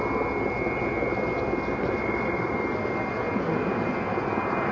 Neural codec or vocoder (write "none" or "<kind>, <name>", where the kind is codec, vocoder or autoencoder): none